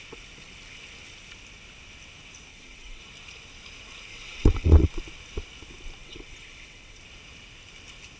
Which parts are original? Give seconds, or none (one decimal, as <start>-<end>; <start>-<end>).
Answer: 0.0-2.5; 3.0-4.1; 4.9-6.0; 7.0-8.2